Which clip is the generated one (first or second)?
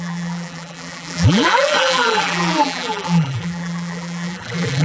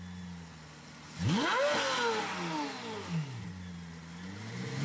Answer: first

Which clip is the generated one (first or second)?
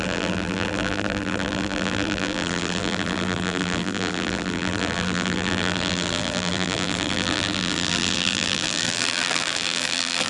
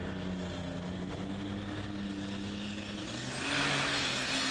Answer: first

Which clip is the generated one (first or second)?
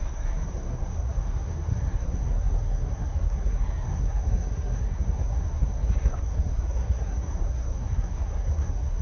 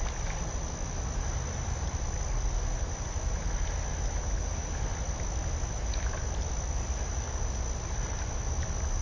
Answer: first